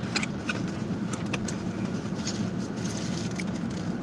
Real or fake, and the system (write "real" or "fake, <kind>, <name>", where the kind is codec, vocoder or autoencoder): real